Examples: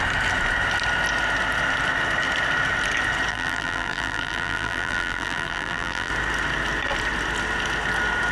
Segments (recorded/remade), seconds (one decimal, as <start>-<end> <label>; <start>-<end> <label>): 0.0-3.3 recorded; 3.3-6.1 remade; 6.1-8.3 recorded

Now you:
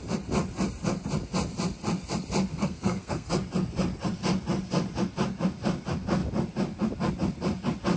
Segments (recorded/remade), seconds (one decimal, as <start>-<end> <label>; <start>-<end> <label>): 0.0-2.5 recorded; 2.5-3.3 remade; 3.3-8.0 recorded

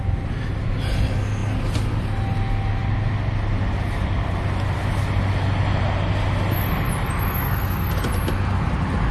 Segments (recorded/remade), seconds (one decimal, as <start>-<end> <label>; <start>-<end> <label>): 0.0-9.1 recorded